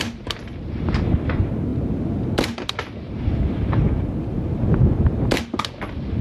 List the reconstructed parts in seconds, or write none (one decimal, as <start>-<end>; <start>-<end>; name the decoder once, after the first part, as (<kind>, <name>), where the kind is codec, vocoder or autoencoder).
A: none